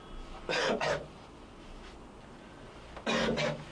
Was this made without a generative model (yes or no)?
yes